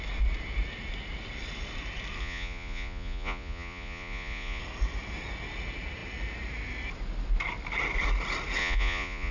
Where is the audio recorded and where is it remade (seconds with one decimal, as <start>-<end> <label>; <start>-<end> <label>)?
0.0-2.2 recorded; 2.2-4.6 remade; 4.6-8.6 recorded; 8.6-9.3 remade